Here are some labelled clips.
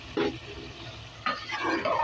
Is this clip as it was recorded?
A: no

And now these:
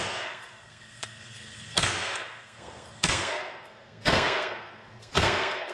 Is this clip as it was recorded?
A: no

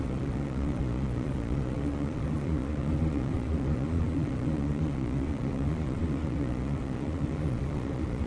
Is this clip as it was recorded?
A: no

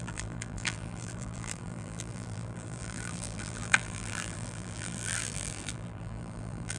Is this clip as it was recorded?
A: no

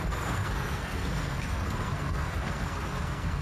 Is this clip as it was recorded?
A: no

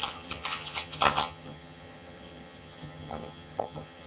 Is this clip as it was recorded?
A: no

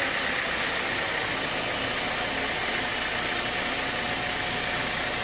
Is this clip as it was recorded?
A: yes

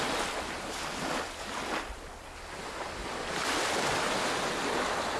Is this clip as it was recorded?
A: yes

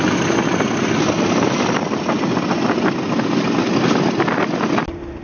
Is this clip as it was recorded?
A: yes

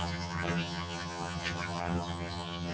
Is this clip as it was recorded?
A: no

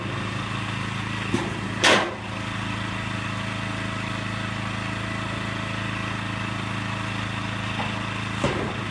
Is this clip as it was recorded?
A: yes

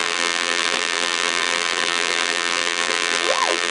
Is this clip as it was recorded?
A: no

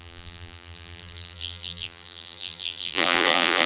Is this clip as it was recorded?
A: no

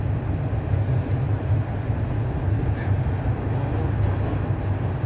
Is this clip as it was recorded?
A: yes